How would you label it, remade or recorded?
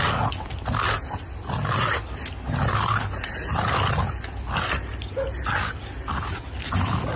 recorded